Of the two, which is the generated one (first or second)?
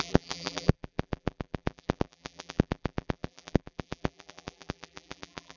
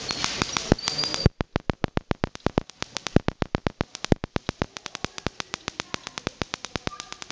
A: first